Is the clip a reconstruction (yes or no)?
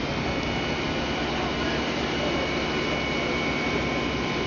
no